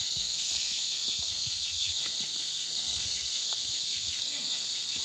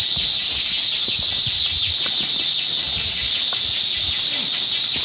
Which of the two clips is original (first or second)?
second